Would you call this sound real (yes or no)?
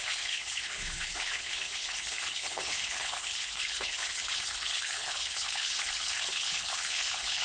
no